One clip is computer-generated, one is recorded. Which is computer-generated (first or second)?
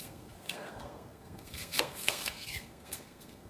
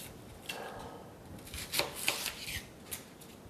first